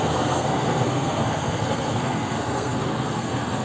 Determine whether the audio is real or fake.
fake